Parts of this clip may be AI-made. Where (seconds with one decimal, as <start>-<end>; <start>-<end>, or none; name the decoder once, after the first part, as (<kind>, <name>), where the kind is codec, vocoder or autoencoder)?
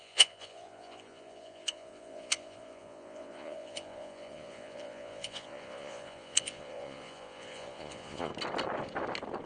0.0-8.3 (vocoder, Vocos)